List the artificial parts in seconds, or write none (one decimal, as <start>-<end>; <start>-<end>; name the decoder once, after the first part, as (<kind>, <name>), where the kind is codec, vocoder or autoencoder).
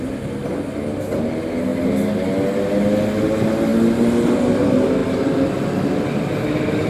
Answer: none